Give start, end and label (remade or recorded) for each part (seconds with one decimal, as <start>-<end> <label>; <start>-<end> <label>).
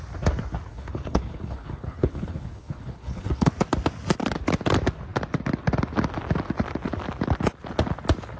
0.0-0.7 recorded; 0.7-3.5 remade; 3.5-8.4 recorded